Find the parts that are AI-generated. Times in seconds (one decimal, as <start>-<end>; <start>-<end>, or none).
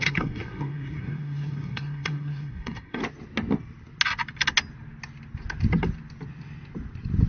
0.0-3.0